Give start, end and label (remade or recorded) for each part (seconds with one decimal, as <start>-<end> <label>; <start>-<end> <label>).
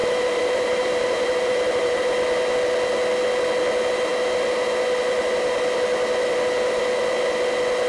0.0-2.0 remade; 2.0-7.9 recorded